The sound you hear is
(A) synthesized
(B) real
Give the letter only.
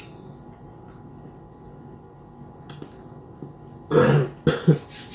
B